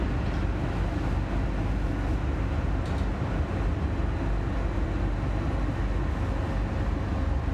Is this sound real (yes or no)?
yes